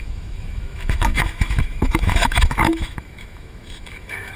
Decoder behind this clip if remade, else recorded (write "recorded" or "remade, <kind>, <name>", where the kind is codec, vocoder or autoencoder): remade, autoencoder, DAC-VAE